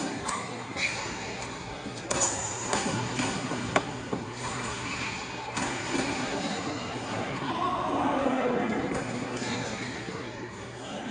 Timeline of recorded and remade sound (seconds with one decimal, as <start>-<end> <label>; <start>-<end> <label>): 0.0-7.5 remade; 7.5-8.2 recorded; 8.2-11.1 remade